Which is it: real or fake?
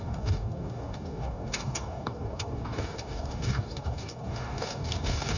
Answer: fake